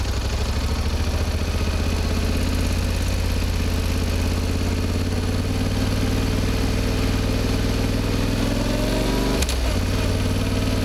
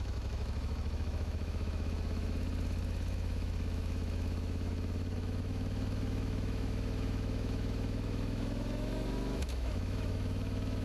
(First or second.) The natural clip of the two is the first